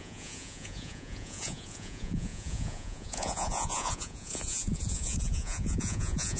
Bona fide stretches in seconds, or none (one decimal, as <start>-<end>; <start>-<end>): none